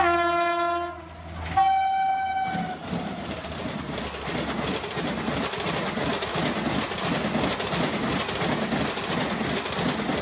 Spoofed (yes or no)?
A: no